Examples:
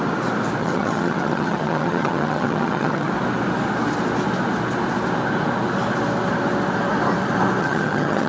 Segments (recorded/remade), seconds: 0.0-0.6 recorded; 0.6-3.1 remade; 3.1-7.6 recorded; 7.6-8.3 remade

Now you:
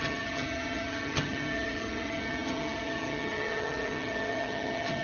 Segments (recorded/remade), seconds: 0.0-5.0 remade

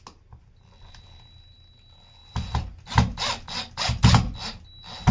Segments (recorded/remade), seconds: 0.0-5.1 recorded

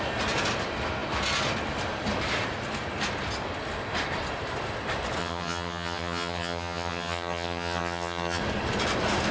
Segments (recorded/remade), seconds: 0.0-5.2 recorded; 5.2-8.4 remade; 8.4-9.3 recorded

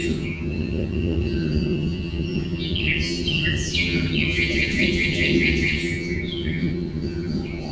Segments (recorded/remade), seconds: 0.0-7.7 remade

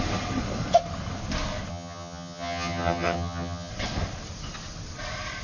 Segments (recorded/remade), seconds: 0.0-1.7 recorded; 1.7-3.7 remade; 3.7-5.4 recorded

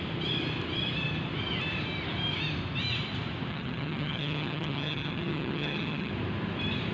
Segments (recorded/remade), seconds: 0.0-3.5 recorded; 3.5-6.1 remade; 6.1-6.9 recorded

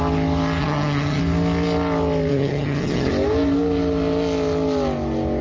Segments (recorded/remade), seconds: 0.0-0.6 recorded; 0.6-1.2 remade; 1.2-2.3 recorded; 2.3-3.1 remade; 3.1-5.4 recorded